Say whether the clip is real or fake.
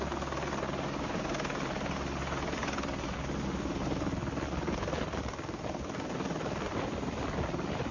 real